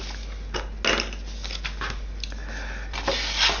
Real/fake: real